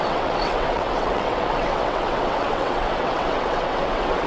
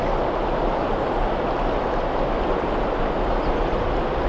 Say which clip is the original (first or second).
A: second